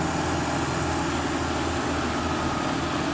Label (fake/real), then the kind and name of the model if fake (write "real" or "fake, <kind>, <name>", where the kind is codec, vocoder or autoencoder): real